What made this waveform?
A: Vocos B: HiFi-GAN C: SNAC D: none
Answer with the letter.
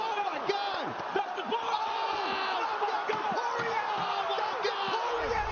D